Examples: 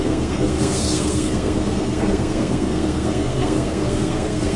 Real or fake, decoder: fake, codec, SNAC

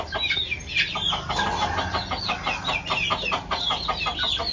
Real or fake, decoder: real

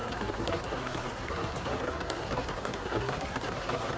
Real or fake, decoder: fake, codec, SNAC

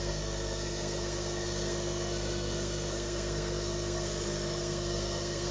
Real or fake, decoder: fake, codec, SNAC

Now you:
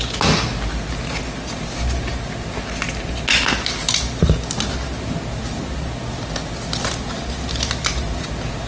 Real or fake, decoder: real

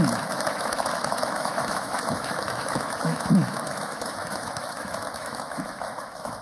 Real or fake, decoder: fake, autoencoder, DAC-VAE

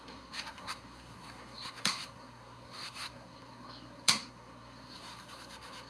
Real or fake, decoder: fake, codec, SNAC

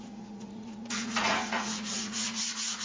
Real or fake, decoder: fake, vocoder, Vocos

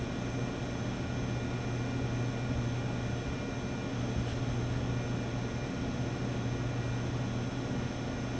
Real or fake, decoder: real